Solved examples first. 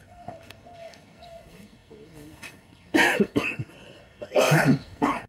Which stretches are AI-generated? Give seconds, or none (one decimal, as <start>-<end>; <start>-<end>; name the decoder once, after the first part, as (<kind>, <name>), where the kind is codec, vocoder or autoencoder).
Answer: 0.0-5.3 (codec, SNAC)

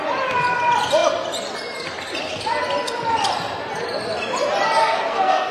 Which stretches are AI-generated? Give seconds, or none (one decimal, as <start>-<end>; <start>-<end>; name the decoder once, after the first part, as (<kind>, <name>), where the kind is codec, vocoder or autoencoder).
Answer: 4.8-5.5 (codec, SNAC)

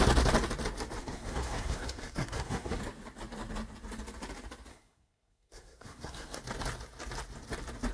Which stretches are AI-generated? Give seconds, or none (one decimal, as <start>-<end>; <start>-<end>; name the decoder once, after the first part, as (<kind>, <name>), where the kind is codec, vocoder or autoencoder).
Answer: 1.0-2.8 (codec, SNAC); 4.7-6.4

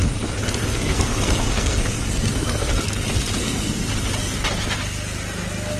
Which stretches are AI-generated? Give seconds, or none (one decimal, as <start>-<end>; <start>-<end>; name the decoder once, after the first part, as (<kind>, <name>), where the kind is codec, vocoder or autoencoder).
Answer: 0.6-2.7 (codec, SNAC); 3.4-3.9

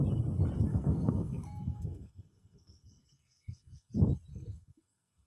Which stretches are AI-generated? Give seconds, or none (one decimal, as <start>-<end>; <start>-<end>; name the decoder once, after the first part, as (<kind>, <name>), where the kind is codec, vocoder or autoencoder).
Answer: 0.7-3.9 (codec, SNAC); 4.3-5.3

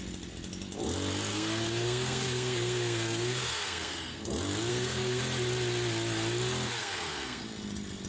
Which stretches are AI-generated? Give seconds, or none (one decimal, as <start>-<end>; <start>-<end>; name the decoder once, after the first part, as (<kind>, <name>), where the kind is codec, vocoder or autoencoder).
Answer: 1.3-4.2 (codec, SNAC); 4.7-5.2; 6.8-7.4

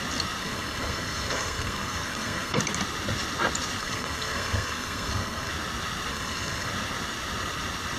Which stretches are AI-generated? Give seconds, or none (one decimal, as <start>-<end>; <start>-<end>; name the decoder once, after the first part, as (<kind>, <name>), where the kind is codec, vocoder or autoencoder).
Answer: 0.4-2.6 (codec, SNAC); 3.8-5.5; 6.1-6.7

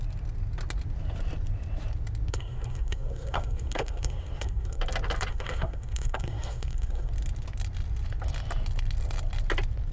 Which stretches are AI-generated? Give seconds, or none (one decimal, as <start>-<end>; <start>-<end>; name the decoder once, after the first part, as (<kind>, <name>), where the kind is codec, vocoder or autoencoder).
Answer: 2.3-4.8 (codec, SNAC); 5.3-7.1